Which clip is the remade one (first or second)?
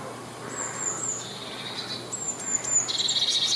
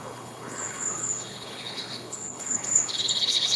second